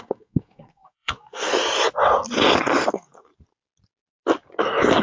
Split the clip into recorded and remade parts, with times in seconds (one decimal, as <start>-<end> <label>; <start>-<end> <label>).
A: 0.0-1.5 remade; 1.5-2.9 recorded; 2.9-3.3 remade; 3.3-5.0 recorded